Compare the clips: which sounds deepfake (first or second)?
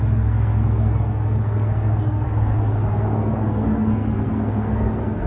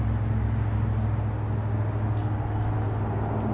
first